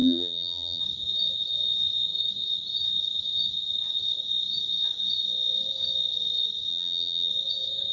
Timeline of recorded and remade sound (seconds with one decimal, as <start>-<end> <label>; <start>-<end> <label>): 0.0-0.8 remade; 0.8-6.7 recorded; 6.7-7.3 remade; 7.3-7.9 recorded